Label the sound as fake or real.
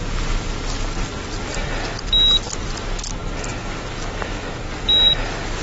real